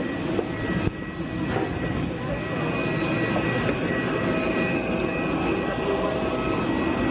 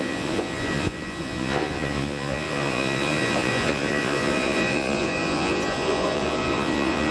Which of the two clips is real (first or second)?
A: first